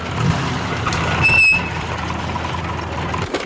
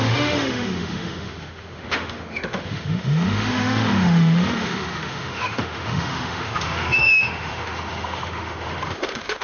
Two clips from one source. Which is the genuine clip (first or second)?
first